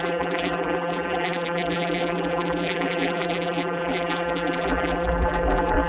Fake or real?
fake